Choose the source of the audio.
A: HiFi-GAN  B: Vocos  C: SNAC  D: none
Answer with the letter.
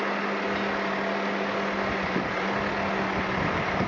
D